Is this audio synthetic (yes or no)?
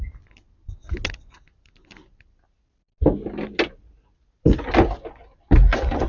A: no